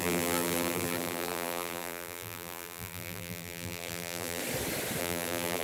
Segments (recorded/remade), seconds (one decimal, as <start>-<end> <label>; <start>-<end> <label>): 0.0-4.4 remade; 4.4-5.0 recorded; 5.0-5.6 remade